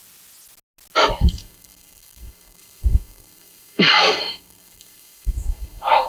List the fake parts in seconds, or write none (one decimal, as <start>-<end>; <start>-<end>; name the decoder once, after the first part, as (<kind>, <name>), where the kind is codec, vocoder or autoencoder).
1.2-6.1 (codec, SNAC)